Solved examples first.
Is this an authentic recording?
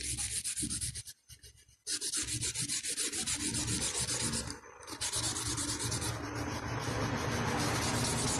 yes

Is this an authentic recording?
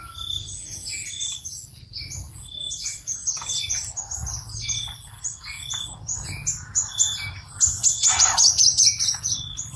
yes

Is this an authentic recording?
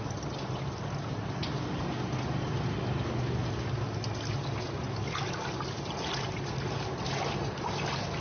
yes